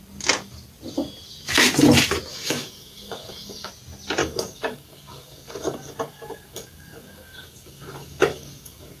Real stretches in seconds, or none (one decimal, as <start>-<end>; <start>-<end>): 0.0-2.3; 3.7-4.2